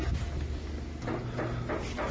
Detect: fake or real real